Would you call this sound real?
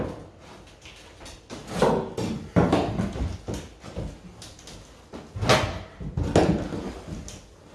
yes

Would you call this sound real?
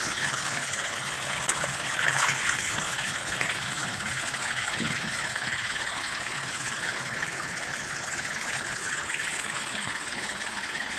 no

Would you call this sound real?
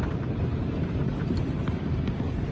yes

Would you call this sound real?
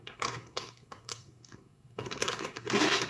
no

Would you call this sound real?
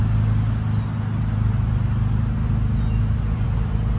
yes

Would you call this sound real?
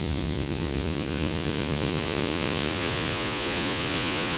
no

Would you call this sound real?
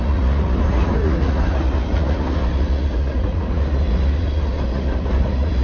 no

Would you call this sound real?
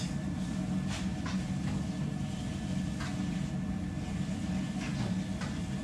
yes